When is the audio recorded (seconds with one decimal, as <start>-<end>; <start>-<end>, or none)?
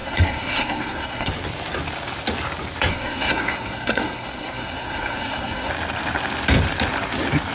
1.3-2.9; 5.7-7.5